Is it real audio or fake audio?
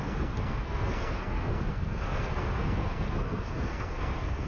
fake